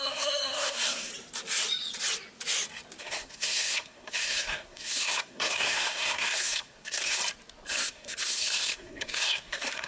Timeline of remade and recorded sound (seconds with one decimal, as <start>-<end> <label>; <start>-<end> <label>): 0.0-1.1 remade; 1.1-3.0 recorded; 3.0-7.2 remade; 7.2-7.7 recorded; 7.7-9.9 remade